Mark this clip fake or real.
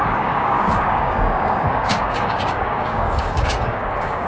fake